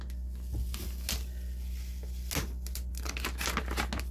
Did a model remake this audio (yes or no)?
no